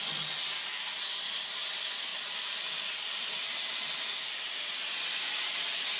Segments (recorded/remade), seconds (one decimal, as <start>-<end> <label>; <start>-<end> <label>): 0.0-2.1 recorded; 2.1-3.3 remade; 3.3-6.0 recorded